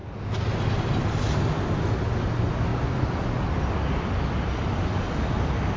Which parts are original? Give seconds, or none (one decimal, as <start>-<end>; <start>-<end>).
0.0-5.8